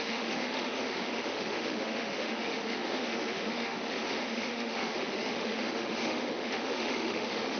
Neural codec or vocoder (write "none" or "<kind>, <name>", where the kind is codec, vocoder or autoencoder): autoencoder, DAC-VAE